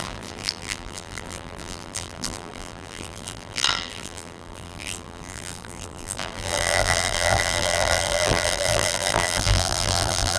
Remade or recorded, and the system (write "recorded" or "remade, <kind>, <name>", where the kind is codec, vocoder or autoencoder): remade, vocoder, BigVGAN v2